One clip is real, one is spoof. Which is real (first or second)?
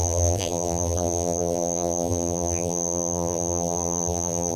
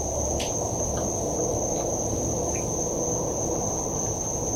second